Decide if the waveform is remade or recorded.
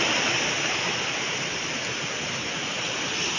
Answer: recorded